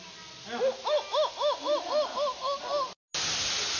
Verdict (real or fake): real